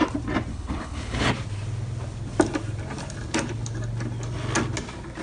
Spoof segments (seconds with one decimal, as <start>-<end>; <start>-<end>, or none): 0.5-1.3